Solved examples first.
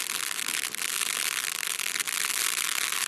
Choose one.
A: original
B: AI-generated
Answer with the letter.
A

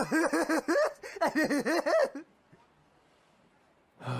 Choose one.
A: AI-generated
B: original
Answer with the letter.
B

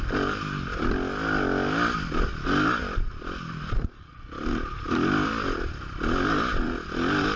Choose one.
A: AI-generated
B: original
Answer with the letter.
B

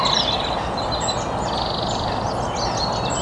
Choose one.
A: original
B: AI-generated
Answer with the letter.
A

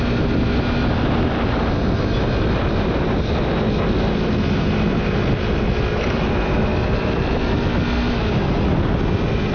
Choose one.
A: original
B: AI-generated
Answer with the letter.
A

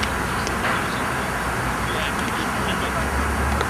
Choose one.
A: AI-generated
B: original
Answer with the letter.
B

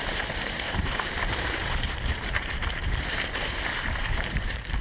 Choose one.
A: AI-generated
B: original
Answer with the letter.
A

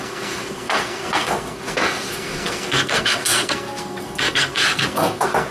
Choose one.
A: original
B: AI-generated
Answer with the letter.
B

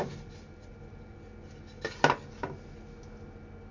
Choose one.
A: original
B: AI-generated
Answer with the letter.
A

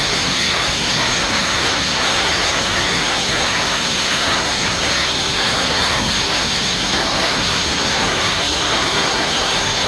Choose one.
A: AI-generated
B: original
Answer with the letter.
A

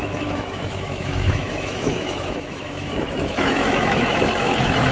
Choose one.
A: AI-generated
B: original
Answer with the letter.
A